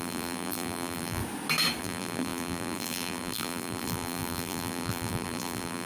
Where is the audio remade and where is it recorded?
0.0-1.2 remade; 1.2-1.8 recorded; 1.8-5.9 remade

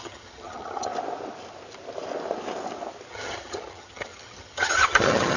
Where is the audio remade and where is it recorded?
0.0-0.9 remade; 0.9-3.1 recorded; 3.1-5.4 remade